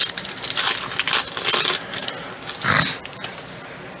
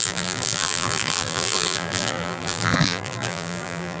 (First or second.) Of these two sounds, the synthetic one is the second